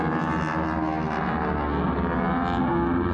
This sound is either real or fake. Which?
real